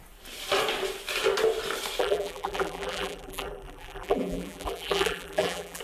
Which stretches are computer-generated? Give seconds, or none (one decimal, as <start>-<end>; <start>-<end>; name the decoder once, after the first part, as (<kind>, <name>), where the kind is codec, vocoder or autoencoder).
2.0-5.8 (vocoder, BigVGAN v2)